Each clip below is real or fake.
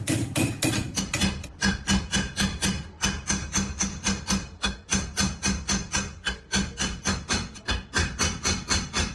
real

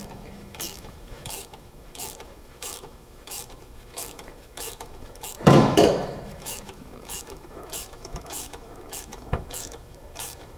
fake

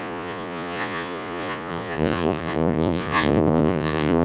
fake